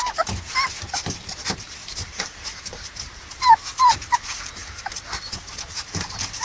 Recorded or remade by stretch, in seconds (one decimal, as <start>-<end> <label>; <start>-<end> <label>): 0.0-1.8 recorded; 1.8-4.5 remade; 4.5-6.4 recorded